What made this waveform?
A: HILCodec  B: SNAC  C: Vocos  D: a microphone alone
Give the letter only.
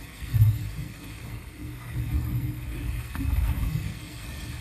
B